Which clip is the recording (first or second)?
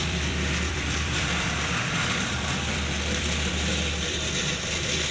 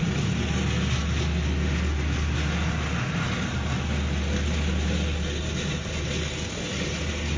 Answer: second